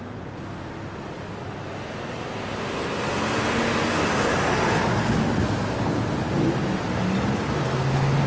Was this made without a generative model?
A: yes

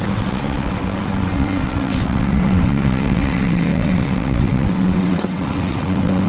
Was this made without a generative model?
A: no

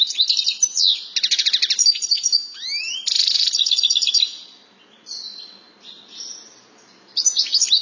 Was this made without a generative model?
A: yes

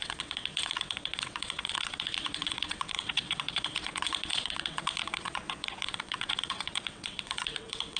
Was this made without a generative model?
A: no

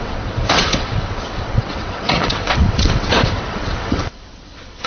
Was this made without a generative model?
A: no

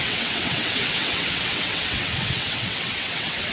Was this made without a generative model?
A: no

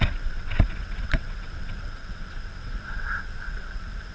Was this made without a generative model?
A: no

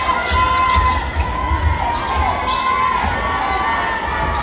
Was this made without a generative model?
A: yes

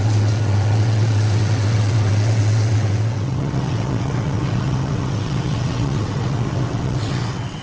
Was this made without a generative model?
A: no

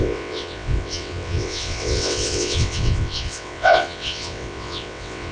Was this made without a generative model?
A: no